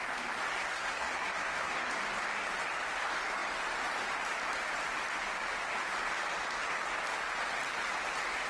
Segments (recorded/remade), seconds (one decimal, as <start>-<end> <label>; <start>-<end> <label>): 0.0-0.7 recorded; 0.7-1.9 remade; 1.9-8.5 recorded